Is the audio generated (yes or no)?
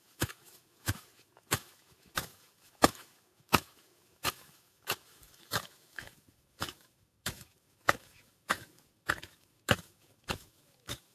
yes